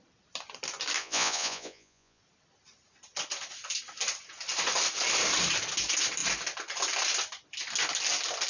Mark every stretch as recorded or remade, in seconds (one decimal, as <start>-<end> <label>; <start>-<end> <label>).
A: 0.0-1.0 recorded; 1.0-2.2 remade; 2.2-8.5 recorded

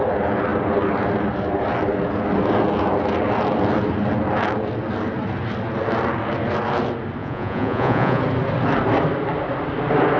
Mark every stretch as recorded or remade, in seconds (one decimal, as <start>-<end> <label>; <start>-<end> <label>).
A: 0.0-7.2 recorded; 7.2-8.2 remade; 8.2-10.2 recorded

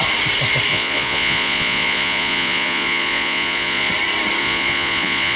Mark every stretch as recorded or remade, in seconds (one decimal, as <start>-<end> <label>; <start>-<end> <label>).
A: 0.0-0.7 recorded; 0.7-3.9 remade; 3.9-4.4 recorded; 4.4-5.4 remade

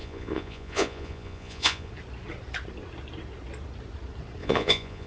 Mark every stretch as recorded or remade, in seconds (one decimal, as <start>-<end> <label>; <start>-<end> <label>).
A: 0.0-1.9 remade; 1.9-4.4 recorded; 4.4-5.1 remade